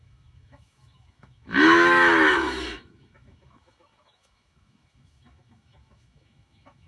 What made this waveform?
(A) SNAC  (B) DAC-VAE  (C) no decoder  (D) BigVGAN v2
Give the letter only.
B